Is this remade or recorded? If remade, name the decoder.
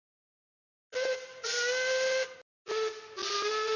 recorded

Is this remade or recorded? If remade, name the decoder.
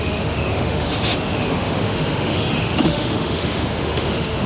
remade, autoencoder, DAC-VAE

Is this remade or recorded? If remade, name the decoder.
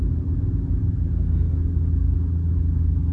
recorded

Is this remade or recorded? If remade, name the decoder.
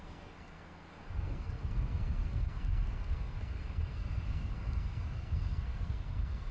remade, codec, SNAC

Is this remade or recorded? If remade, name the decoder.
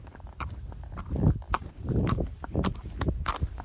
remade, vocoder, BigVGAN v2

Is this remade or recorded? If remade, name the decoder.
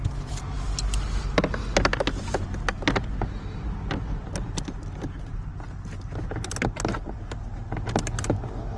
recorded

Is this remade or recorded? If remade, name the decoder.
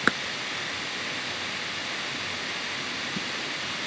recorded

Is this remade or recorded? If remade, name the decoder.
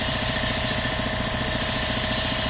remade, vocoder, BigVGAN v2